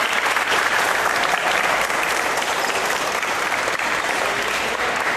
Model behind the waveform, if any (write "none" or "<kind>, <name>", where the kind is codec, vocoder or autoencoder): vocoder, BigVGAN v2